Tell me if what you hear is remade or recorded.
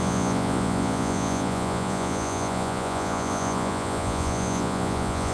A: remade